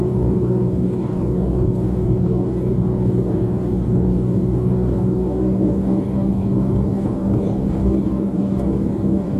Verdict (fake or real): fake